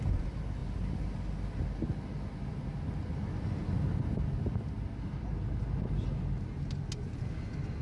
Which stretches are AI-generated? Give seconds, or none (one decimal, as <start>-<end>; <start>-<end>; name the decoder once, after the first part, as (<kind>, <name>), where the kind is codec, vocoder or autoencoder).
none

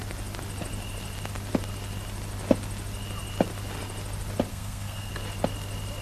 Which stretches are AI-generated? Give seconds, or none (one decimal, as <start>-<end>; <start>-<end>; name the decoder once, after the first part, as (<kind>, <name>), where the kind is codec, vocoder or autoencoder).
4.5-5.1 (codec, SNAC)

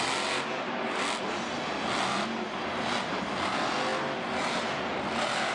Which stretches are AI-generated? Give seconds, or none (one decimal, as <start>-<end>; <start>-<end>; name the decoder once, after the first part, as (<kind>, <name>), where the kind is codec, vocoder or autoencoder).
none

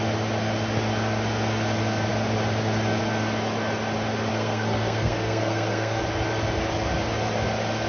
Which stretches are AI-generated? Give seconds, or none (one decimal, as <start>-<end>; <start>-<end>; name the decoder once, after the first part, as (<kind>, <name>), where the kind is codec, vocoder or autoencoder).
4.3-6.0 (codec, SNAC)